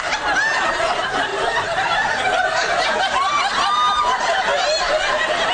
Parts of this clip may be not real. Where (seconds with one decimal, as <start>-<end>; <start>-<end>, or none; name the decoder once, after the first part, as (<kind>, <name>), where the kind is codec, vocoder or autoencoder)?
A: 1.3-3.0 (vocoder, BigVGAN v2)